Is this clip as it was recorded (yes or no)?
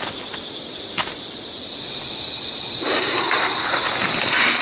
yes